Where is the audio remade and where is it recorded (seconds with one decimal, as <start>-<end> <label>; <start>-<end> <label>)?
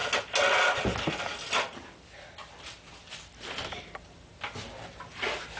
0.0-5.6 recorded